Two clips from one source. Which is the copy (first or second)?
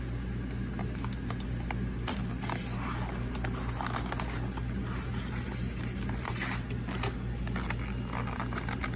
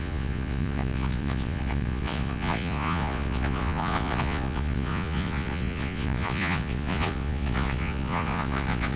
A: second